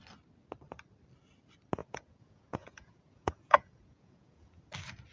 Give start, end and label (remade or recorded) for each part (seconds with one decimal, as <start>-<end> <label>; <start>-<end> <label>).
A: 0.0-1.8 recorded; 1.8-4.6 remade; 4.6-5.1 recorded